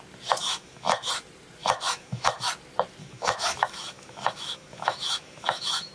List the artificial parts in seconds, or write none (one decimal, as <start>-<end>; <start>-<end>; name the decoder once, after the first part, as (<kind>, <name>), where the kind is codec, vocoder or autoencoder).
0.4-1.1 (autoencoder, DAC-VAE); 1.6-2.5; 3.0-5.9